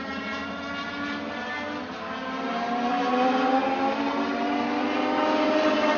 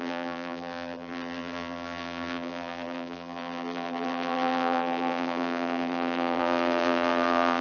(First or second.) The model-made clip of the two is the second